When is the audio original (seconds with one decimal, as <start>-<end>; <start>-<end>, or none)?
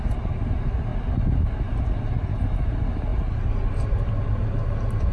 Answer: 0.0-5.1